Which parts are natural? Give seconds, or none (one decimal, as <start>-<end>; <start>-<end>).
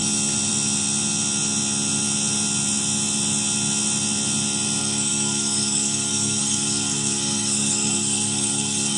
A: 0.0-4.8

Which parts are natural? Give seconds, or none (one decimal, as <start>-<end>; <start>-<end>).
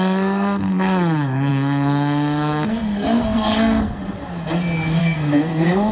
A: 4.0-5.0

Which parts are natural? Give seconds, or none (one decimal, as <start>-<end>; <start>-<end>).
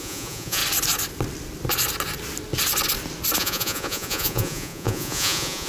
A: 0.6-3.4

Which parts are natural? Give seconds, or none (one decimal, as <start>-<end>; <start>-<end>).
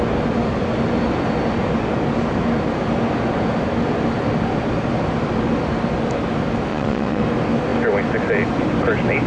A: 0.0-6.7; 7.2-9.3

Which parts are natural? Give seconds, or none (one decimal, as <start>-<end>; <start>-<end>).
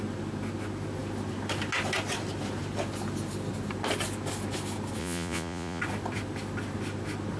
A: 0.0-5.0; 5.8-7.4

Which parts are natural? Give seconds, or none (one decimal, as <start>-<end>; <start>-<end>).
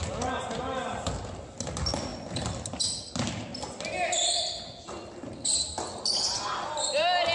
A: 0.0-7.3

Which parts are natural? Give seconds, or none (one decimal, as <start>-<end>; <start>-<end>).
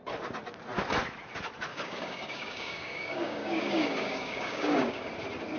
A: 0.0-1.7; 5.1-5.6